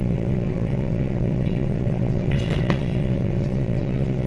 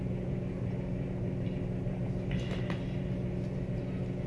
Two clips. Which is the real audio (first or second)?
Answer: second